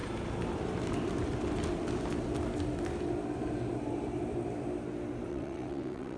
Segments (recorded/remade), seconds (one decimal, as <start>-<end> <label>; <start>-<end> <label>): 0.0-5.3 recorded; 5.3-6.2 remade